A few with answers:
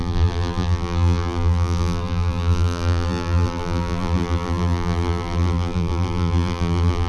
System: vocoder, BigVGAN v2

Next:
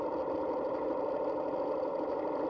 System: none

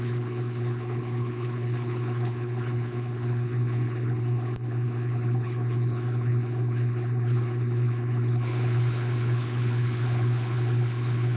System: codec, HILCodec